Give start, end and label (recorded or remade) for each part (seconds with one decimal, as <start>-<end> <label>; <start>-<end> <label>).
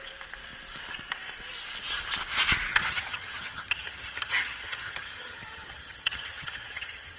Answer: 0.0-2.7 recorded; 2.7-7.2 remade